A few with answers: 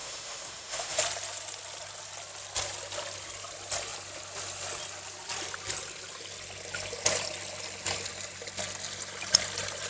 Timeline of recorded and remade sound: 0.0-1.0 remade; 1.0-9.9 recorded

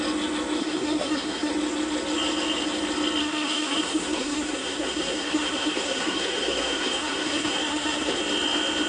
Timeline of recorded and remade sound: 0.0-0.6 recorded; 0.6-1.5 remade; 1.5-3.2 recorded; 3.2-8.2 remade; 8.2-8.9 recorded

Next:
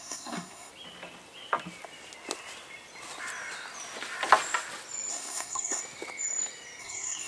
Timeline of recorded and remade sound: 0.0-0.7 remade; 0.7-5.1 recorded; 5.1-5.8 remade; 5.8-6.8 recorded; 6.8-7.3 remade